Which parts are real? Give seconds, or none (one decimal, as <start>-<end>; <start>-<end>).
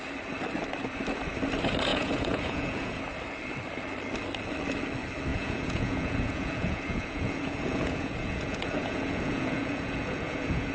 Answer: 0.0-1.9; 3.0-5.3